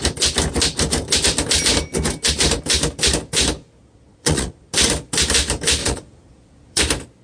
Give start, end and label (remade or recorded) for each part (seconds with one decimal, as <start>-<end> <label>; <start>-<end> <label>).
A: 0.0-3.8 recorded; 3.8-4.7 remade; 4.7-5.8 recorded; 5.8-6.8 remade; 6.8-7.2 recorded